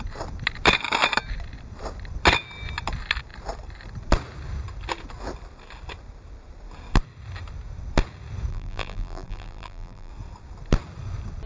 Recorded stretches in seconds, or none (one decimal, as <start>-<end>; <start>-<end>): 0.0-8.5; 10.1-11.5